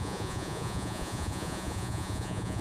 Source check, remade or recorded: remade